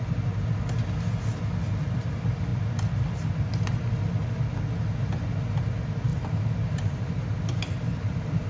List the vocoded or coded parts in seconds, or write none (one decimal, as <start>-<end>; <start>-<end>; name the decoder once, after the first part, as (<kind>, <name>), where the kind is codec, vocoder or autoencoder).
6.1-7.1 (vocoder, BigVGAN v2); 7.9-8.5